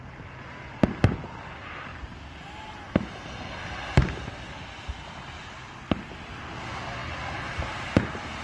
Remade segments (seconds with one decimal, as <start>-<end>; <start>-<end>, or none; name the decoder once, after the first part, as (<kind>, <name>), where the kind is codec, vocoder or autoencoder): none